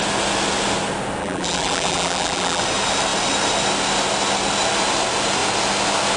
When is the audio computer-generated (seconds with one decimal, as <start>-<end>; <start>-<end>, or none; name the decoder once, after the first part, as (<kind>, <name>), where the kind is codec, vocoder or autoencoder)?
1.2-2.6 (vocoder, BigVGAN v2)